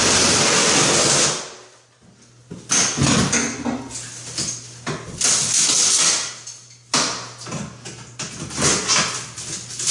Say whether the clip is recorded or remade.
recorded